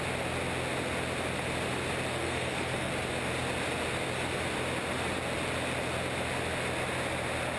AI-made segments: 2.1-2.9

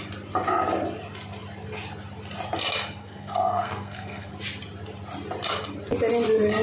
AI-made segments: 3.0-4.3